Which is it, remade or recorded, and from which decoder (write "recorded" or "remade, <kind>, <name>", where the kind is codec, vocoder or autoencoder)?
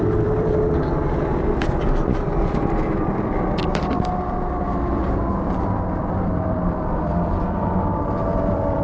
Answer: remade, vocoder, BigVGAN v2